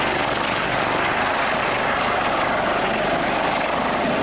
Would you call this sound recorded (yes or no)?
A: yes